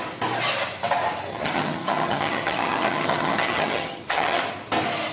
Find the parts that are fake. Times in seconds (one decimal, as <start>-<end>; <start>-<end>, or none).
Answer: 1.3-4.4